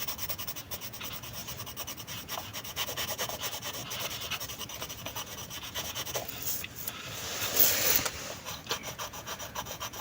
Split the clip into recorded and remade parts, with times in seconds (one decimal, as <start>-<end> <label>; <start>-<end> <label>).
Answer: 0.0-1.4 remade; 1.4-2.0 recorded; 2.0-3.8 remade; 3.8-4.9 recorded; 4.9-6.2 remade; 6.2-8.9 recorded; 8.9-10.0 remade